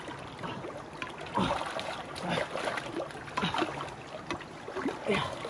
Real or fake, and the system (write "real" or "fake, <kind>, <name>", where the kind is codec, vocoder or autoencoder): real